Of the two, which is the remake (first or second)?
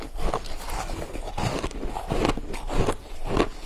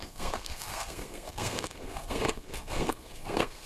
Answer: second